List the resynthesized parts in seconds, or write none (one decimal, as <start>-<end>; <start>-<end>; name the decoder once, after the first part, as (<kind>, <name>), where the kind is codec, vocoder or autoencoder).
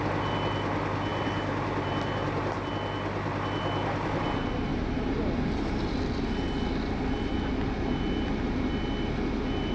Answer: 1.1-2.7 (vocoder, BigVGAN v2); 4.7-7.5